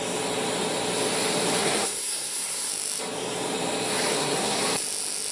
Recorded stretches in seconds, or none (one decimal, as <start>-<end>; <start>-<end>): 0.0-1.6; 2.7-4.1; 4.6-5.3